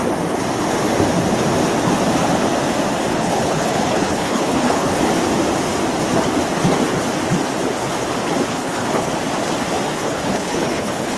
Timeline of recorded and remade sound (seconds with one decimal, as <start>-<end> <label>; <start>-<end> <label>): 0.0-3.1 recorded; 3.1-5.0 remade; 5.0-8.5 recorded; 8.5-9.1 remade; 9.1-9.9 recorded; 9.9-11.2 remade